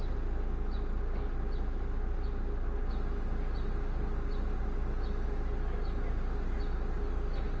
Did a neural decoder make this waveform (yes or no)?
no